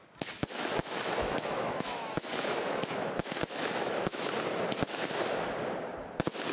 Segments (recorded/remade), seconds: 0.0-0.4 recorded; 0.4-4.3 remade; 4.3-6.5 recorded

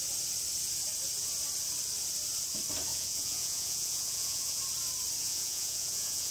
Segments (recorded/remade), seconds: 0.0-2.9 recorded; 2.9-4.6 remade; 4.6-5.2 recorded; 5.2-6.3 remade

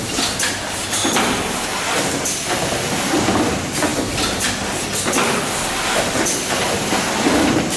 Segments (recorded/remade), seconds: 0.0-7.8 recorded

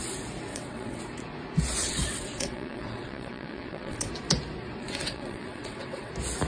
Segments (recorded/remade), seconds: 0.0-0.5 recorded; 0.5-1.0 remade; 1.0-1.8 recorded; 1.8-4.1 remade; 4.1-4.8 recorded; 4.8-6.1 remade; 6.1-6.5 recorded